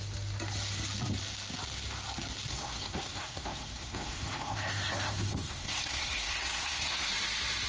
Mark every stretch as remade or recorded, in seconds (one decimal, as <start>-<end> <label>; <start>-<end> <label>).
0.0-2.5 recorded; 2.5-7.1 remade; 7.1-7.7 recorded